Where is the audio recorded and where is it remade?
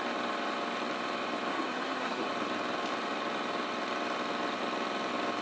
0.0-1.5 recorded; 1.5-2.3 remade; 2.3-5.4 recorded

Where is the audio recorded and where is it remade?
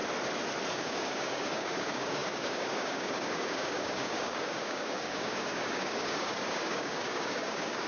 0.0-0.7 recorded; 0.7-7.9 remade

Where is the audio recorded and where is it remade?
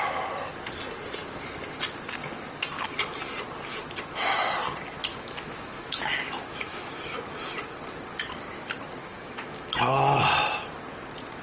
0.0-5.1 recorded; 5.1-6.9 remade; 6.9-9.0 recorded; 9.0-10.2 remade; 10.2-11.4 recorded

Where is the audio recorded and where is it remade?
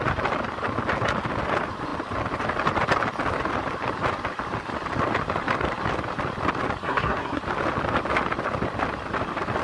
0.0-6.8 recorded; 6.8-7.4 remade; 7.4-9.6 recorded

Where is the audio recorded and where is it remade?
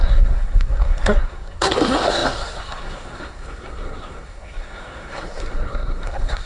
0.0-6.5 remade